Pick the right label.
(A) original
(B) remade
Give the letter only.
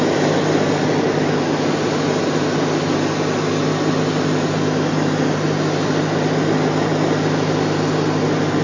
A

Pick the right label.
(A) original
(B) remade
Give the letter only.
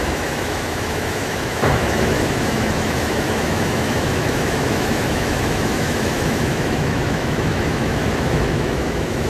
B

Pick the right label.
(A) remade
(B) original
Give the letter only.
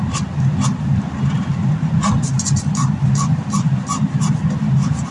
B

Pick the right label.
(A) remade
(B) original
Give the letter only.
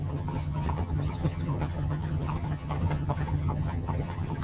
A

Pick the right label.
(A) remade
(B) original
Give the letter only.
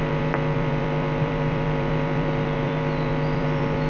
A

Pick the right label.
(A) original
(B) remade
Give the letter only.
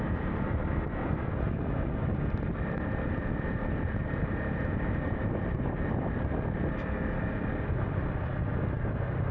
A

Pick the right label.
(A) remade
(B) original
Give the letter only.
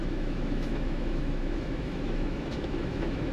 A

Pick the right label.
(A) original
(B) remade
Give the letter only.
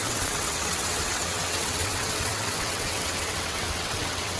B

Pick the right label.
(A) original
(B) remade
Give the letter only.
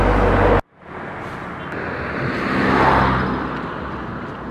A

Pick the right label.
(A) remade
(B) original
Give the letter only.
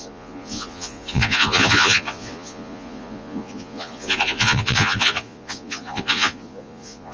A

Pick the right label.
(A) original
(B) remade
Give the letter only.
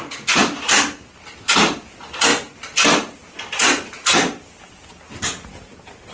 A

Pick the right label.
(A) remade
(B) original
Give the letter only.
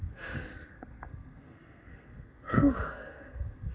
A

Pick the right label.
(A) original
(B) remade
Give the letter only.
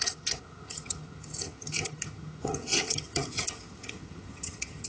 B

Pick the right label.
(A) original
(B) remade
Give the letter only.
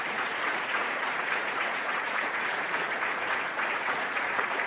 B